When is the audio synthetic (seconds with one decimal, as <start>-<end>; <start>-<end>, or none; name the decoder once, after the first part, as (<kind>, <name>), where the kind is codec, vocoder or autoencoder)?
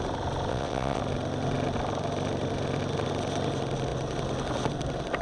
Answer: 0.5-1.0 (vocoder, WaveNeXt)